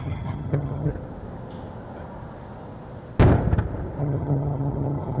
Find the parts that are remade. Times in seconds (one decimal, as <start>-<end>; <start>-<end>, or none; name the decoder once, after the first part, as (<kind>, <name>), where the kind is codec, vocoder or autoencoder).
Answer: 0.0-0.9 (vocoder, HiFi-GAN); 4.0-5.2